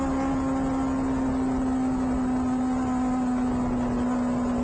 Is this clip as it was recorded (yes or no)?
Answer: yes